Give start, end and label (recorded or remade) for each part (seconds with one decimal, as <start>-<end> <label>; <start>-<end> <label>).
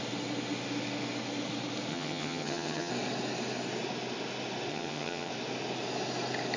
0.0-1.9 recorded; 1.9-2.9 remade; 2.9-4.7 recorded; 4.7-5.3 remade; 5.3-6.6 recorded